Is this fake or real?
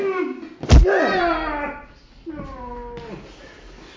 real